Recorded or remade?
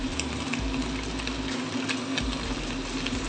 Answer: recorded